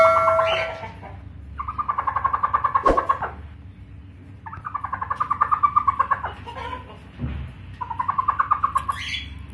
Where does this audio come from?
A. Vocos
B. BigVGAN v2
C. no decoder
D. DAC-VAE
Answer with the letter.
C